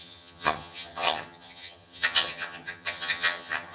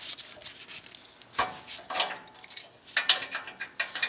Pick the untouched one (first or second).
second